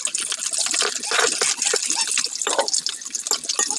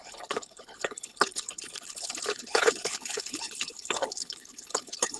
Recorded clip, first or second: first